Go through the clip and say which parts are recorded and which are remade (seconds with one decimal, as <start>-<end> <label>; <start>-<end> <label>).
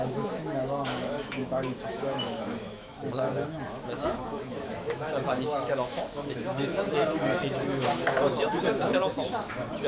0.0-9.9 remade